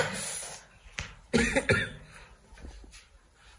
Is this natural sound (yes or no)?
yes